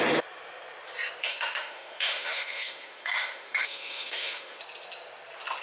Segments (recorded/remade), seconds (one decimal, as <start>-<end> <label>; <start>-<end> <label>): 0.0-1.2 recorded; 1.2-4.6 remade; 4.6-5.6 recorded